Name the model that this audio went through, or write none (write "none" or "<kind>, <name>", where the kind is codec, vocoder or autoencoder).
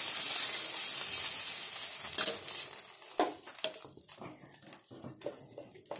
none